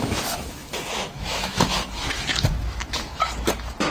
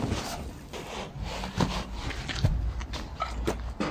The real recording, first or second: second